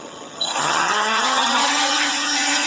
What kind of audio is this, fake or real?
fake